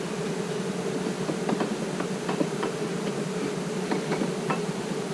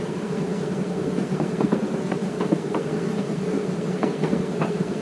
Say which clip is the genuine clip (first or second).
first